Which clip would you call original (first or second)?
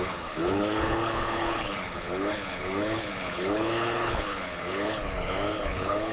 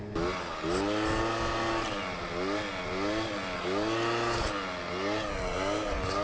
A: second